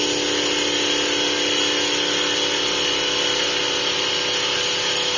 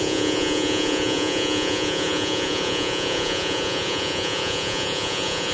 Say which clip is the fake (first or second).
second